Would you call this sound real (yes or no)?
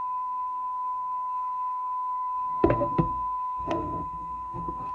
no